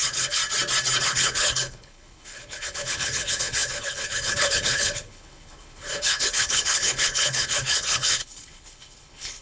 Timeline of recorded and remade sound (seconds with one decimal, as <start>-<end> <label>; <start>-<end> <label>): 0.0-0.4 remade; 0.4-1.0 recorded; 1.0-9.4 remade